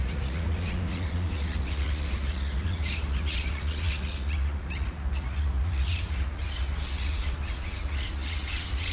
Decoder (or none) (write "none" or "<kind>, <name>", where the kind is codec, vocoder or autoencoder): vocoder, Vocos